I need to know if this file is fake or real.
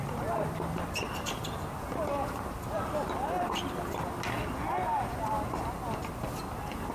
real